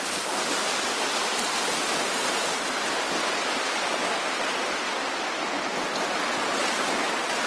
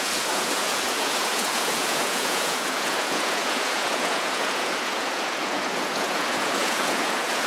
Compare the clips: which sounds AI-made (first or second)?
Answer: second